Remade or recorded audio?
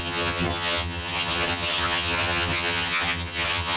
remade